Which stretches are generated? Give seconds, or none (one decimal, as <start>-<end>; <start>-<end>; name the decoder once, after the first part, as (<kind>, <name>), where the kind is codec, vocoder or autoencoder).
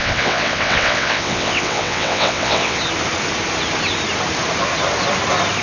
0.0-2.8 (vocoder, WaveNeXt)